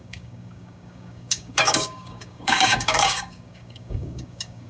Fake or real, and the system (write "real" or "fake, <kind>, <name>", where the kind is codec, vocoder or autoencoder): fake, codec, DAC